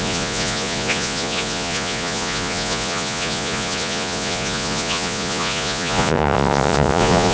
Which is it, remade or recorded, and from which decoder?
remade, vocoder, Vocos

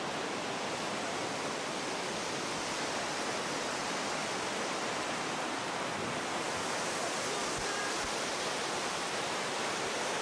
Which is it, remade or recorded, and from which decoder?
recorded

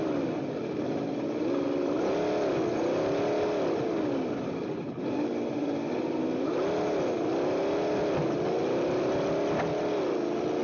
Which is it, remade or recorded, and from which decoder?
recorded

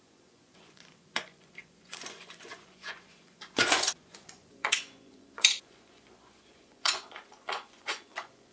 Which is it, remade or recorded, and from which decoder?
remade, vocoder, Vocos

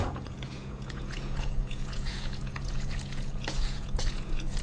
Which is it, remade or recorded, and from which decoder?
remade, vocoder, Vocos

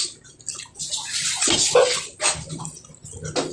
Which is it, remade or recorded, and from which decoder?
recorded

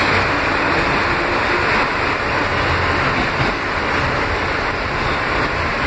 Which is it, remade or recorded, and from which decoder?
recorded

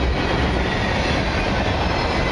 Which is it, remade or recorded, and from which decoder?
recorded